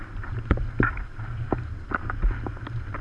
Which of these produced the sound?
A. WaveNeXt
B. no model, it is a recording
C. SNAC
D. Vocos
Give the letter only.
B